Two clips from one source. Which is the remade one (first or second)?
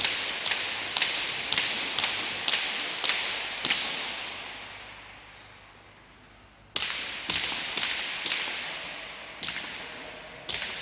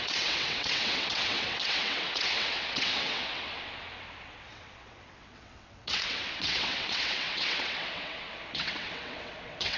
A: second